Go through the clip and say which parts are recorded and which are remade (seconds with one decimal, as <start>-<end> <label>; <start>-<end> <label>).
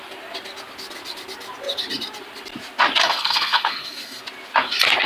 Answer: 0.0-3.0 recorded; 3.0-4.2 remade; 4.2-5.1 recorded